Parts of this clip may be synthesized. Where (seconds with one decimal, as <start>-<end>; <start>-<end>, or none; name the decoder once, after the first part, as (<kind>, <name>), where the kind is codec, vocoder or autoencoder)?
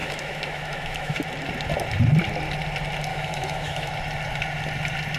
0.0-1.2 (autoencoder, DAC-VAE); 3.1-3.9